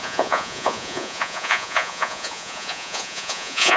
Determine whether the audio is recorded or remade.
remade